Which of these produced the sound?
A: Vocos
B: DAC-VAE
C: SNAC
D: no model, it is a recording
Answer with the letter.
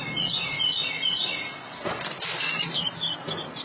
D